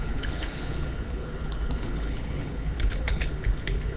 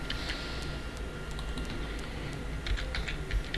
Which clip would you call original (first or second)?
second